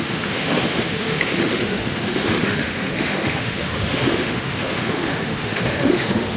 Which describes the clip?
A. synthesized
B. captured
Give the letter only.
A